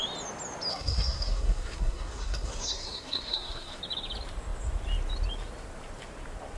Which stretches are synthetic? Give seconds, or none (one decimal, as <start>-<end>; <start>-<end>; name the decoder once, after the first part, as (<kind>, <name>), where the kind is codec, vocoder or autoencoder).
0.7-3.8 (codec, SNAC)